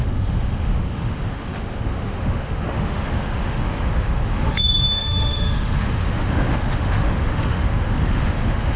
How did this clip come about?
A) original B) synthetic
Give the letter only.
B